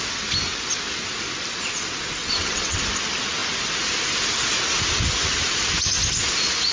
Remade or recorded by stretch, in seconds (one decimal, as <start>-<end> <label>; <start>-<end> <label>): 0.0-2.2 recorded; 2.2-2.8 remade; 2.8-6.7 recorded